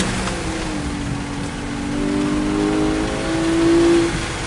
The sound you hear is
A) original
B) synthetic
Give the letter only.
A